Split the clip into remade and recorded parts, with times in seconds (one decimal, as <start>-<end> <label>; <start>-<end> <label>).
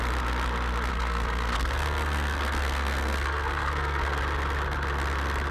0.0-0.9 recorded; 0.9-4.2 remade; 4.2-5.5 recorded